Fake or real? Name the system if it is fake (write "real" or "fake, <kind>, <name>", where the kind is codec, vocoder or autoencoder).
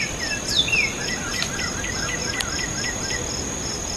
fake, vocoder, BigVGAN v2